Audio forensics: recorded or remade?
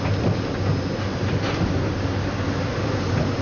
recorded